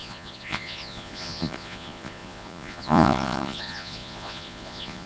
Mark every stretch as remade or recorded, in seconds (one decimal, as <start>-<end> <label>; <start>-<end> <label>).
0.0-5.1 remade